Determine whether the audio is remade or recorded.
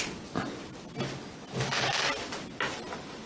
recorded